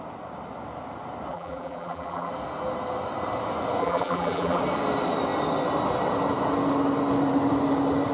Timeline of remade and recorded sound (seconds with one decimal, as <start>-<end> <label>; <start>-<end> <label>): 0.0-1.3 recorded; 1.3-2.3 remade; 2.3-3.8 recorded; 3.8-4.6 remade; 4.6-8.1 recorded